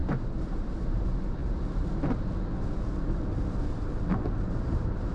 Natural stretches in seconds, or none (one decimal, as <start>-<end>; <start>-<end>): 1.4-4.5